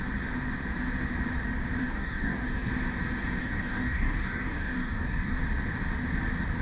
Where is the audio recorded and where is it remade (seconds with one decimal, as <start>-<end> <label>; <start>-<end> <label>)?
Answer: 0.0-1.8 recorded; 1.8-2.7 remade; 2.7-3.4 recorded; 3.4-5.4 remade; 5.4-6.6 recorded